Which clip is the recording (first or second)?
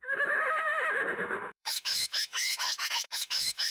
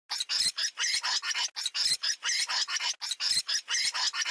second